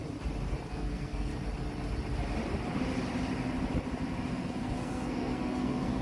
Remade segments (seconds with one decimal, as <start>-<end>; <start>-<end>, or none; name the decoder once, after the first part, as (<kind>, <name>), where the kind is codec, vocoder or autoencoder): 0.7-1.3 (codec, SNAC); 4.3-6.0